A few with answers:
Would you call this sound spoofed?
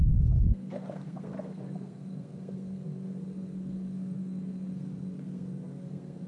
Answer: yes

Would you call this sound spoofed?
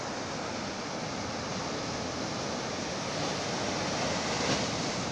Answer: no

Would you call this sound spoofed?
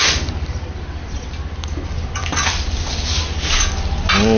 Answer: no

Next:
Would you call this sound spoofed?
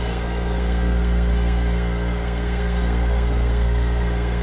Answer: yes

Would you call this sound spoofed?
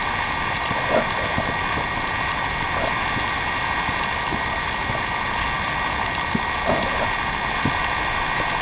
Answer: no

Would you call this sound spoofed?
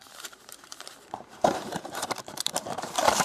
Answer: yes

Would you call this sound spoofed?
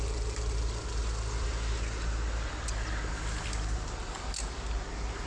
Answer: no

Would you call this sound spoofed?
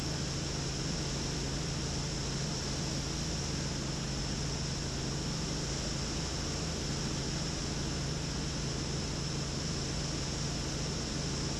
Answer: no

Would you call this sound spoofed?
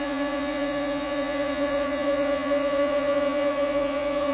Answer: yes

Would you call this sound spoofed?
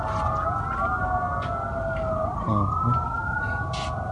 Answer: no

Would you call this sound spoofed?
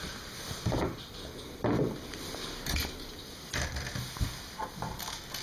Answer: no